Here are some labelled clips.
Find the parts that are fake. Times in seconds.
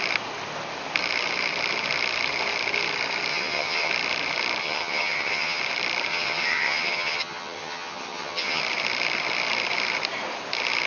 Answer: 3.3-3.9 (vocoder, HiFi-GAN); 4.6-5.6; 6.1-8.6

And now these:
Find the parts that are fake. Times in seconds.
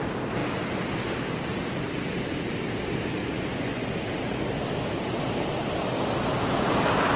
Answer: 3.2-3.9 (vocoder, Vocos)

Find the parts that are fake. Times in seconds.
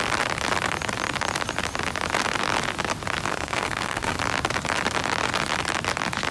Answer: 3.3-4.2 (codec, SNAC)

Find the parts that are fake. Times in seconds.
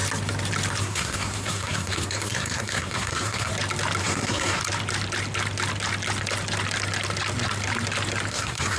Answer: 0.8-3.5 (codec, SNAC); 4.0-4.6; 8.3-8.8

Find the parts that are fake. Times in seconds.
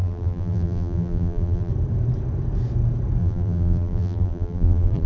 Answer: 0.0-1.7 (vocoder, BigVGAN v2); 3.2-5.1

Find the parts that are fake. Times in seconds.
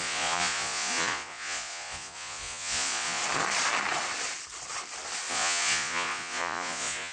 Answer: 0.0-3.2 (vocoder, Vocos); 5.3-7.1